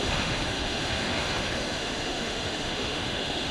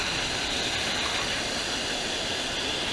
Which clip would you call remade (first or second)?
first